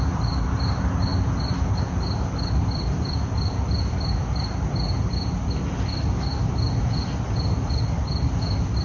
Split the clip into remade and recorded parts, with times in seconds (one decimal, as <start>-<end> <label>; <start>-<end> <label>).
0.0-8.8 recorded